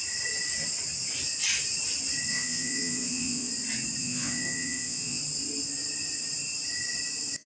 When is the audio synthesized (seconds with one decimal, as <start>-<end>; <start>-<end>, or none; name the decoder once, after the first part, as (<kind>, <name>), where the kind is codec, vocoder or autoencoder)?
2.3-3.5 (vocoder, Vocos); 4.0-5.2